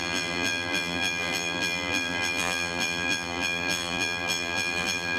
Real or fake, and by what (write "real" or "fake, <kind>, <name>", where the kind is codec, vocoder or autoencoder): fake, vocoder, BigVGAN v2